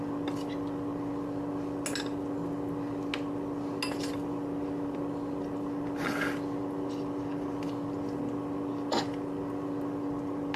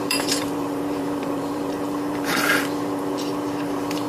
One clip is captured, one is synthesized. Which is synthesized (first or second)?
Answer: second